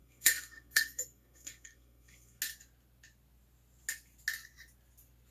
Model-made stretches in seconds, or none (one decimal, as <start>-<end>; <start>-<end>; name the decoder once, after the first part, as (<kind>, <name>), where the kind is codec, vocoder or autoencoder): 0.0-2.4 (codec, SNAC)